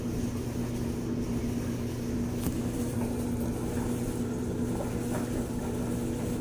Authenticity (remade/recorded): recorded